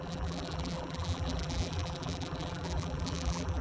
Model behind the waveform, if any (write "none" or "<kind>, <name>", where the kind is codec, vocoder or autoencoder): vocoder, BigVGAN v2